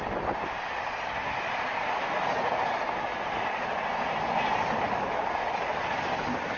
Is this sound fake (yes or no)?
no